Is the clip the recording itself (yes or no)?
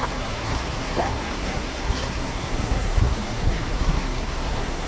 no